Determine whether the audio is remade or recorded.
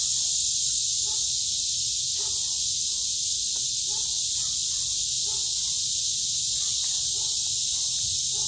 recorded